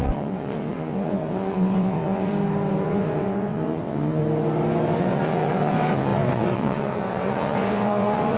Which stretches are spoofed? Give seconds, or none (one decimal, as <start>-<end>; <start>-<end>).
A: 0.0-2.3; 2.8-4.2; 5.0-8.4